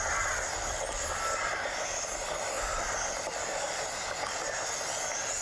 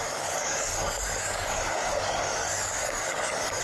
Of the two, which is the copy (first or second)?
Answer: second